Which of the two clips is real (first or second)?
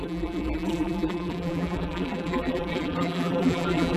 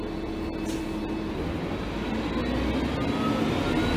second